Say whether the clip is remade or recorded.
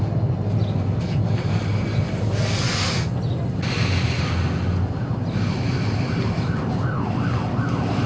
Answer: recorded